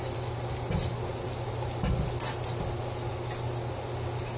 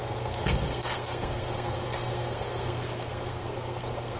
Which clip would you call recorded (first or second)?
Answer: first